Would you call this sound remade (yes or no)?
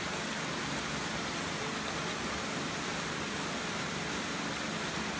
yes